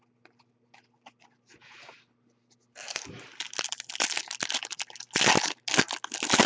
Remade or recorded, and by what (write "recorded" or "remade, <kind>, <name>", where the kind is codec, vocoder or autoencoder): recorded